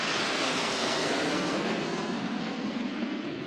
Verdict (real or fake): fake